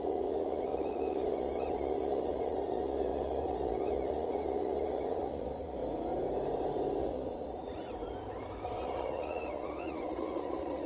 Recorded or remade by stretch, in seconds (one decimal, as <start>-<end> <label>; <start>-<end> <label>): 0.0-5.8 remade; 5.8-7.0 recorded; 7.0-7.9 remade; 7.9-8.8 recorded; 8.8-10.9 remade